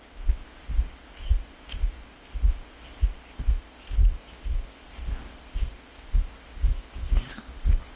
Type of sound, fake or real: fake